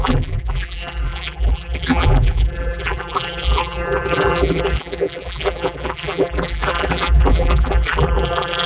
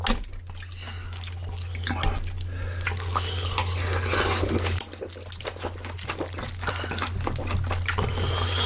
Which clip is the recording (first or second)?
second